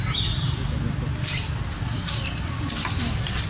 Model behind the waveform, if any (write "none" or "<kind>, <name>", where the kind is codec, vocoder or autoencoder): none